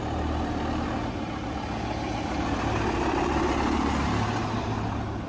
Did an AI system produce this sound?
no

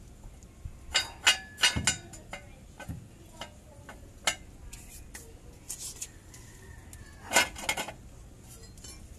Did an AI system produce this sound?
no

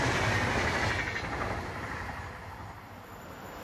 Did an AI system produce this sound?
no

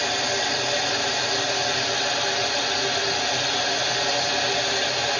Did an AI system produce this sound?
no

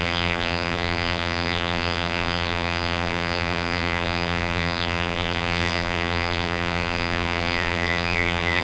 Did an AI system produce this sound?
yes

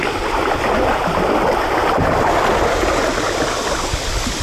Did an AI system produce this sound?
no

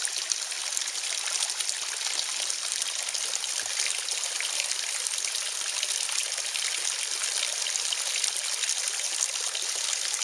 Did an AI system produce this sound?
no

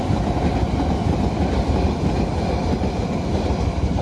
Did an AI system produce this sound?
no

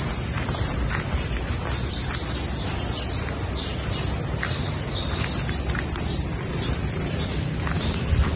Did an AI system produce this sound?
yes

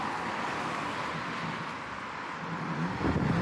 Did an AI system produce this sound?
no